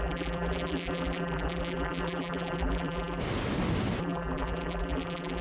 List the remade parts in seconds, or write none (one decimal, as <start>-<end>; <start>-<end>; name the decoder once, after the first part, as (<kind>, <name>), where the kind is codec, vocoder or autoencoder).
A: 0.0-3.2 (vocoder, BigVGAN v2); 4.0-5.4